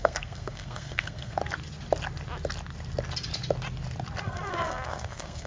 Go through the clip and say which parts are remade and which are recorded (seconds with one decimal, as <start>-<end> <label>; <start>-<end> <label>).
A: 0.0-1.4 remade; 1.4-4.2 recorded; 4.2-5.5 remade